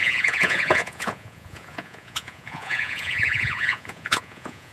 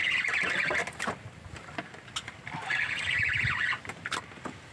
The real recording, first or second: second